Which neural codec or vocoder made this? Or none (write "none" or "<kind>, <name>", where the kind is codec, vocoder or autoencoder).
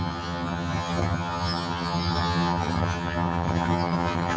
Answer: vocoder, HiFi-GAN